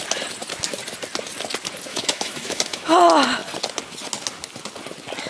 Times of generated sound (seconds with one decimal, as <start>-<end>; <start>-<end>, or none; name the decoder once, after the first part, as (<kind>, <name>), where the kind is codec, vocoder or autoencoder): 1.9-3.0 (autoencoder, DAC-VAE)